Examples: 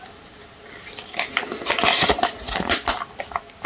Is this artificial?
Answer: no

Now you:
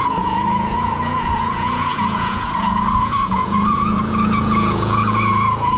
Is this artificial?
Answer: yes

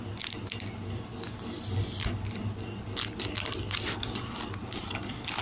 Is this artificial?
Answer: no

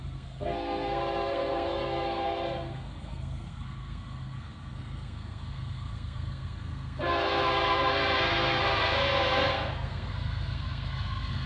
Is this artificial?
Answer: yes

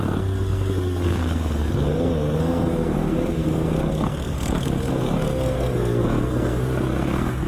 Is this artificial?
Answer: yes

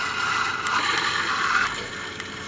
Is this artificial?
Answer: no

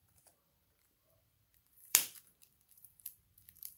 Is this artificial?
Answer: yes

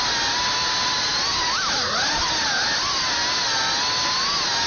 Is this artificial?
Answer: no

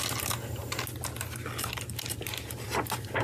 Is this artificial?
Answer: no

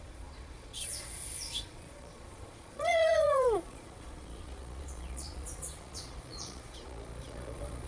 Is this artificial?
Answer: yes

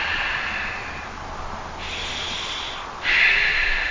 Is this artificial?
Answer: no